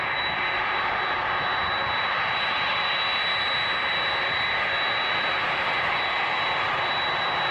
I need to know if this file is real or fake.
real